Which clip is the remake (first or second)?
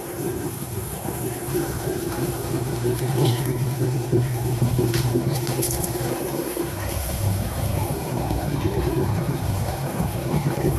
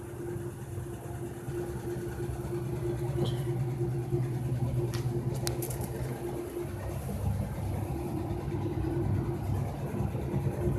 first